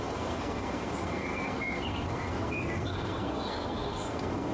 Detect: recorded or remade remade